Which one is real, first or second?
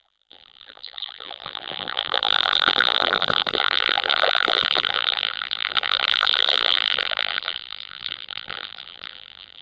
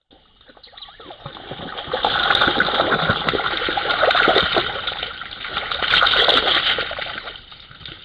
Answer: second